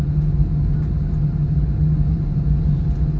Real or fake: fake